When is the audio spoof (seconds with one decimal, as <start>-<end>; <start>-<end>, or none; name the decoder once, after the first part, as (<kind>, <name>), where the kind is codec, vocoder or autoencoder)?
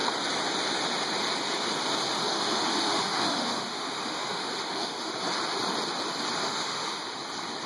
2.3-5.1 (autoencoder, DAC-VAE); 6.4-7.0